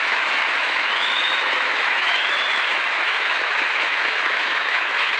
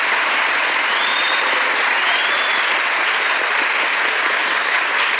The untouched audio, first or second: second